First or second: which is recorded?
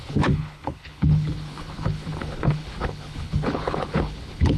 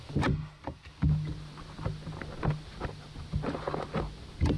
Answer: second